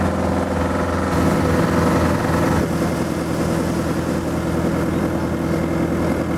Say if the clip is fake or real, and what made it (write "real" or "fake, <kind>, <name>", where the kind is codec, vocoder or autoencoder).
real